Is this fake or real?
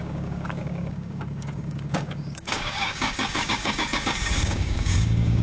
fake